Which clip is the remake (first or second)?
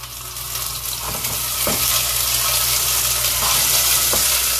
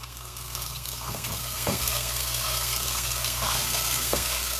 second